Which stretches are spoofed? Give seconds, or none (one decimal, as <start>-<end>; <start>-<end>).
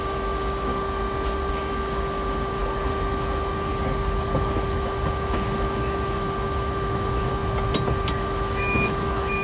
0.0-0.7; 1.5-2.6; 4.7-7.4; 8.2-9.4